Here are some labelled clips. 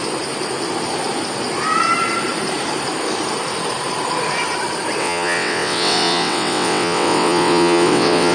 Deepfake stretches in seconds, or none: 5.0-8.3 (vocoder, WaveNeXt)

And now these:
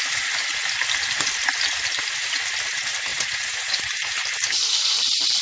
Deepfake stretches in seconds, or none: 3.1-3.8 (vocoder, Vocos)

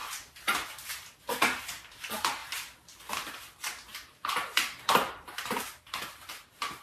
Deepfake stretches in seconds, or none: none

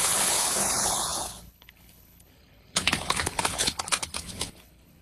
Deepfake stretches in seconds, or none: 0.0-5.0 (codec, HILCodec)

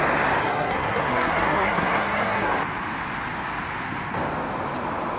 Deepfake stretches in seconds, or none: 0.4-2.5 (codec, SNAC)

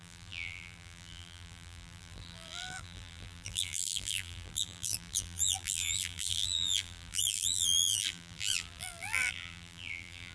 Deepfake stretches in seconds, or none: 0.0-10.3 (vocoder, BigVGAN v2)